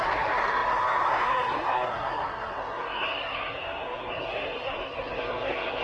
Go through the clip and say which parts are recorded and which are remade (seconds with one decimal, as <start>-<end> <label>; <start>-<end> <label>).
0.0-5.8 remade